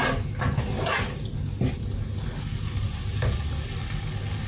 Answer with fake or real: real